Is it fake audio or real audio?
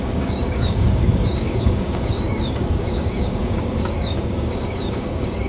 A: fake